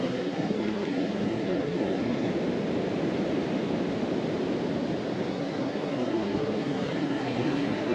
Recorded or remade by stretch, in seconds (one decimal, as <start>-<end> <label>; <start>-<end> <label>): 0.0-2.3 remade; 2.3-5.3 recorded; 5.3-7.9 remade